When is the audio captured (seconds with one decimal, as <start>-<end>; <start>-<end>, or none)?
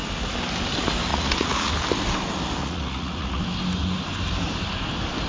0.0-1.1; 1.7-2.6; 3.4-5.3